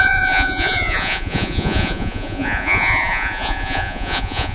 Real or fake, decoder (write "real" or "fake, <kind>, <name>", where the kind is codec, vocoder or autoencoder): fake, vocoder, Vocos